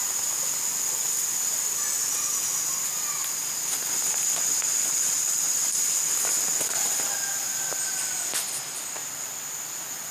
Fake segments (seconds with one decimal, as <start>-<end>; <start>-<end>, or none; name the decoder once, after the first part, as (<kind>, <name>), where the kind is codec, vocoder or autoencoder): none